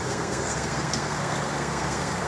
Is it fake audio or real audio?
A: fake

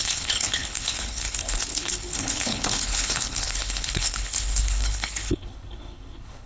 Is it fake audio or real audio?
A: fake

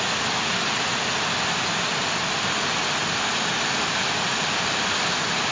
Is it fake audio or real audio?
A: real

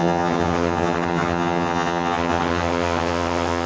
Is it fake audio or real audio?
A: fake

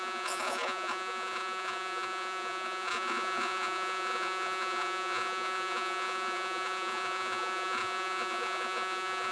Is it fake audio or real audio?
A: fake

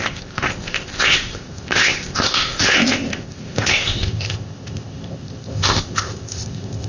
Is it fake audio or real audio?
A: fake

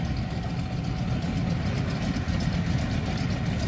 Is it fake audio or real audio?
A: real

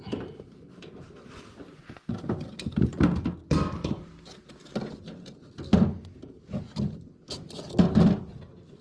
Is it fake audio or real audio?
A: real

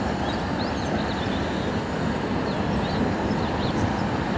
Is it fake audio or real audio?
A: real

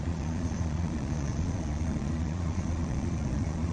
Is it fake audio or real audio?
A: fake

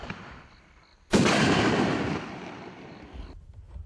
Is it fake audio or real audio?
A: real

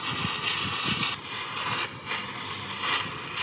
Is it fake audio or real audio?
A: real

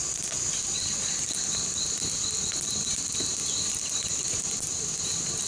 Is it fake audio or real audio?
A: real